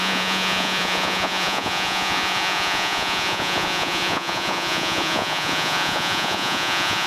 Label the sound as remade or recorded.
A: remade